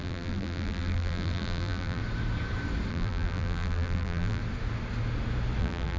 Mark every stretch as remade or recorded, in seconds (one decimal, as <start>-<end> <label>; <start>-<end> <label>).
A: 0.0-2.0 remade; 2.0-2.9 recorded; 2.9-4.4 remade; 4.4-5.6 recorded; 5.6-6.0 remade